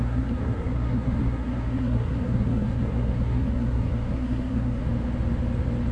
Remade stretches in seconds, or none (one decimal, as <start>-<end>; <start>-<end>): 0.0-4.8